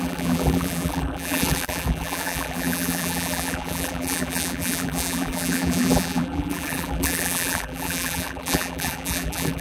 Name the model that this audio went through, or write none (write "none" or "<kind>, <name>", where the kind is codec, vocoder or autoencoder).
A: vocoder, BigVGAN v2